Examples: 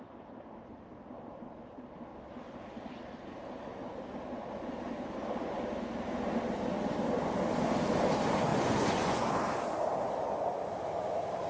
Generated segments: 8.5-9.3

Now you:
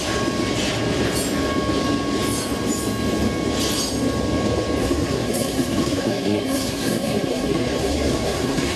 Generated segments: 4.8-8.8

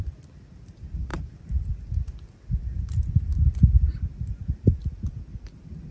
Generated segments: none